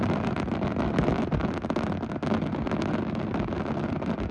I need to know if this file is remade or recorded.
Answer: recorded